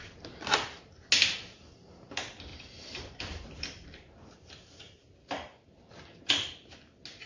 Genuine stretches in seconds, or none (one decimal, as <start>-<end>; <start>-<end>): 0.0-2.5; 6.2-7.3